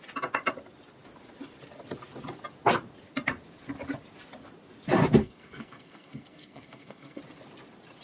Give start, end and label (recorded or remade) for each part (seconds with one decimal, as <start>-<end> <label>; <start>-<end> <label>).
0.0-5.2 recorded; 5.2-7.2 remade; 7.2-8.0 recorded